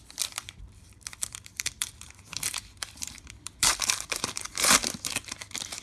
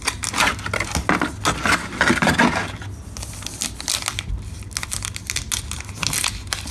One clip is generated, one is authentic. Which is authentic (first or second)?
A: second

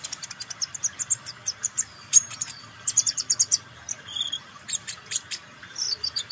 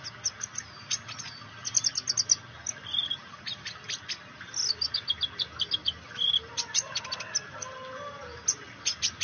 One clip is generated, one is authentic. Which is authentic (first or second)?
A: second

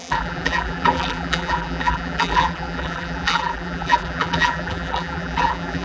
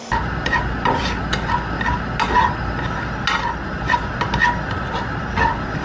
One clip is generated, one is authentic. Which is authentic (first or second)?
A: second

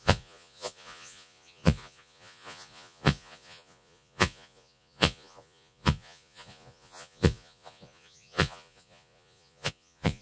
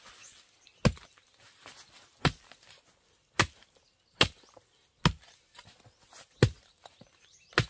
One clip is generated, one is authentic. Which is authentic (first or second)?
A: second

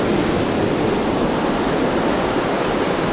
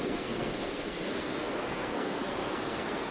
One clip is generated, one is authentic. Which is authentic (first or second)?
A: first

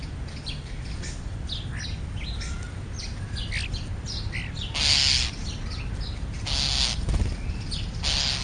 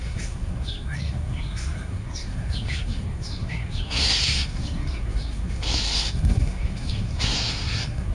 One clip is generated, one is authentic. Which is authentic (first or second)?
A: first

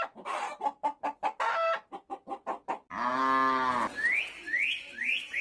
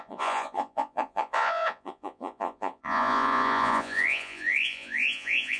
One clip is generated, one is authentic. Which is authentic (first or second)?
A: first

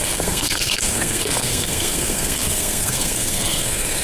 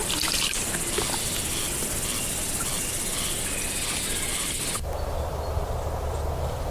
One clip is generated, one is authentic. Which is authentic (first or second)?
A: second